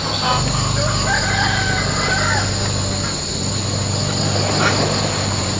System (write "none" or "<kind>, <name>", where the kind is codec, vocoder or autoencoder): none